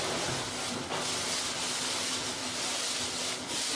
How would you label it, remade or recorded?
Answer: recorded